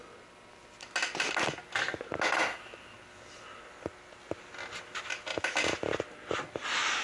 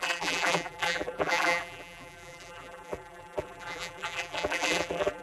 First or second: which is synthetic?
second